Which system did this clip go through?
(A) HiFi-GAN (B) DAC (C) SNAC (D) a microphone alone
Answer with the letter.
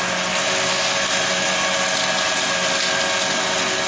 D